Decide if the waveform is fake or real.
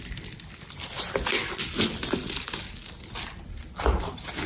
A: real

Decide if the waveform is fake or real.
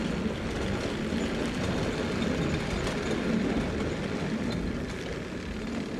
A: real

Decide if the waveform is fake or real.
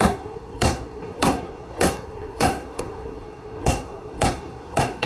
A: fake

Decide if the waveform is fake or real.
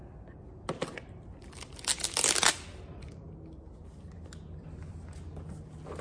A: real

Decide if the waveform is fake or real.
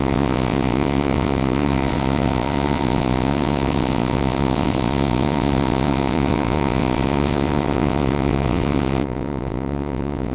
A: fake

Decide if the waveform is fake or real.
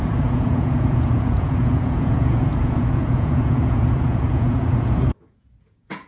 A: fake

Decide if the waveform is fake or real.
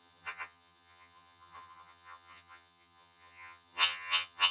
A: fake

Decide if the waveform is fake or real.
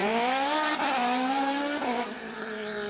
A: fake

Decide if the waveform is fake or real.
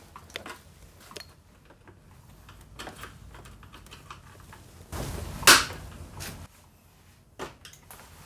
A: real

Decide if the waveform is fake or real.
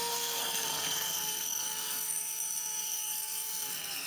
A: fake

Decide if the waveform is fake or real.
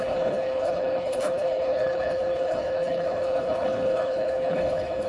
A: fake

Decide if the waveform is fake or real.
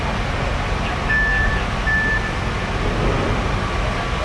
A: real